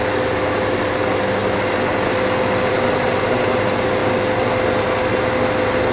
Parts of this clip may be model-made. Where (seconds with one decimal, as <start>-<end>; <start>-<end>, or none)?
none